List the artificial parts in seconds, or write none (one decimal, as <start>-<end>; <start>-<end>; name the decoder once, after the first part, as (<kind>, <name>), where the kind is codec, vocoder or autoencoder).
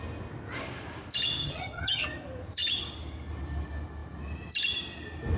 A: 1.4-2.0 (vocoder, HiFi-GAN)